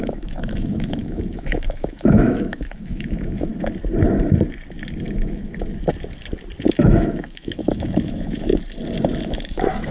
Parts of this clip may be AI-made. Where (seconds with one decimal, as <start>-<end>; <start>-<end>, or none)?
0.0-3.5; 5.1-5.5; 6.7-8.5; 9.2-9.9